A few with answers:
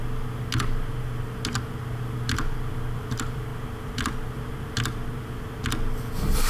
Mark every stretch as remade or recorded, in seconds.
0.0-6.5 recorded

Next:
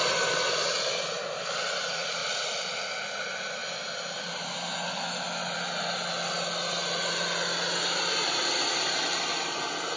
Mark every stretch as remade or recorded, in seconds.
0.0-2.2 recorded; 2.2-2.7 remade; 2.7-10.0 recorded

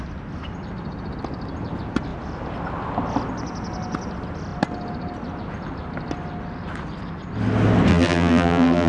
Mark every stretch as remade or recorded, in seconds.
0.0-7.9 recorded; 7.9-8.9 remade

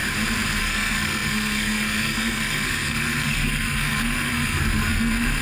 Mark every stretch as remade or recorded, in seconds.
0.0-0.6 recorded; 0.6-5.4 remade

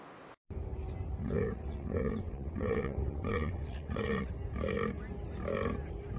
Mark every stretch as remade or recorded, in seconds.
0.0-1.2 recorded; 1.2-4.3 remade; 4.3-6.2 recorded